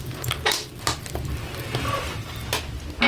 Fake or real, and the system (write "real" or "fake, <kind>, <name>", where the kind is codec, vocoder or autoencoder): real